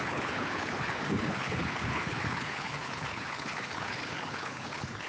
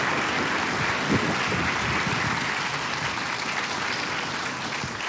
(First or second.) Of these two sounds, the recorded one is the second